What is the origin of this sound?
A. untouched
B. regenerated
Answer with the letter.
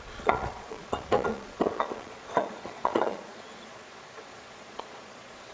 B